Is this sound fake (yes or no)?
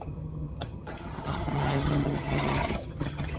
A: yes